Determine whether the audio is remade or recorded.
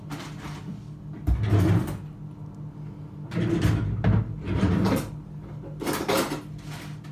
recorded